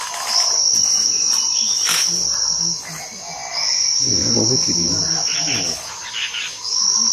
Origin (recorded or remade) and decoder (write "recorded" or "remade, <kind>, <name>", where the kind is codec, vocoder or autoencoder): recorded